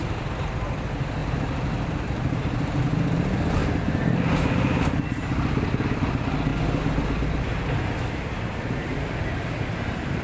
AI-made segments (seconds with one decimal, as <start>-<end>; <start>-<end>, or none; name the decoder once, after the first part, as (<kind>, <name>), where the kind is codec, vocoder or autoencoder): 1.2-2.8 (vocoder, BigVGAN v2); 3.6-4.8